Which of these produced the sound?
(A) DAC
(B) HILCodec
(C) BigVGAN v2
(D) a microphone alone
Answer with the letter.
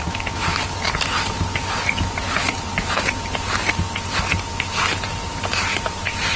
D